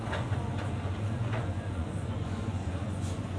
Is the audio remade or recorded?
remade